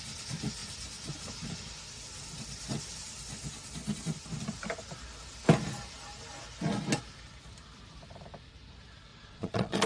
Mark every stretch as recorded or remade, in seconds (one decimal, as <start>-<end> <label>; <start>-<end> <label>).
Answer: 0.0-9.1 recorded; 9.1-9.9 remade

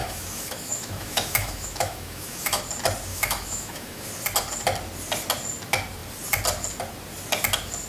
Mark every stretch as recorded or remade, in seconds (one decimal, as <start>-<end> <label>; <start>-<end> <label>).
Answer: 0.0-2.6 remade; 2.6-3.1 recorded; 3.1-4.1 remade; 4.1-7.9 recorded